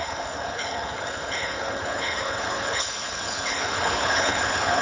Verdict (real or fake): fake